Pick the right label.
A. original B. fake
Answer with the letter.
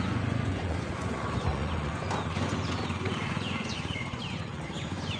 B